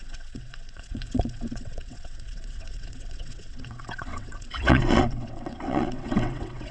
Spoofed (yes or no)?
yes